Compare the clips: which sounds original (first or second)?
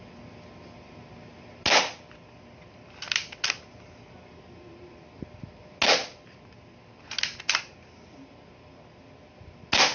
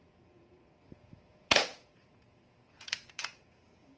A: first